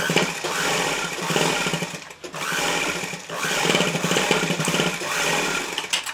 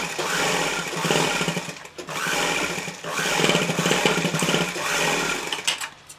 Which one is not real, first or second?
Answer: first